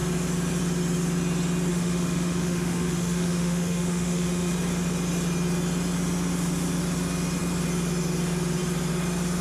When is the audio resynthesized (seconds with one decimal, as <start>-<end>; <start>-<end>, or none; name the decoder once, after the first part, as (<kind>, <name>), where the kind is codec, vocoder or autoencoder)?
1.7-4.5 (autoencoder, DAC-VAE)